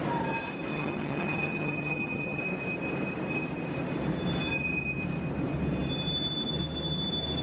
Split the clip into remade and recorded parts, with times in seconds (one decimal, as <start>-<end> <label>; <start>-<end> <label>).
0.0-0.7 recorded; 0.7-2.4 remade; 2.4-7.4 recorded